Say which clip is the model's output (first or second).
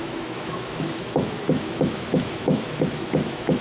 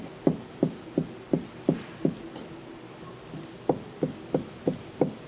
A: first